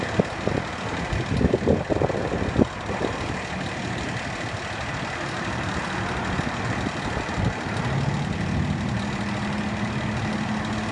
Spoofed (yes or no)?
no